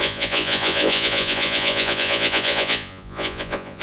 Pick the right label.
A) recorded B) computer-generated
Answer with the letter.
B